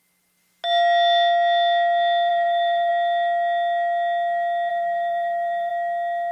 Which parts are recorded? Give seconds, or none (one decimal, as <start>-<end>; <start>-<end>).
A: 0.0-2.3; 2.9-4.7; 5.7-6.3